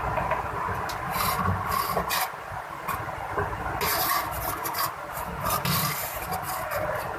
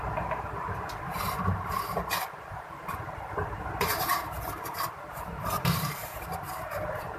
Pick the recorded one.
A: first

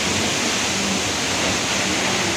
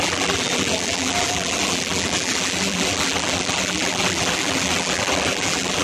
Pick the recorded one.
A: first